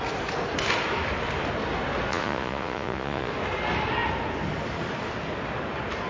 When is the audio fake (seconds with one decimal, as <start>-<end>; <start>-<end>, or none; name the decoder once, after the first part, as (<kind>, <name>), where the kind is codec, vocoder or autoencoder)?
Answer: 2.1-3.3 (vocoder, Vocos)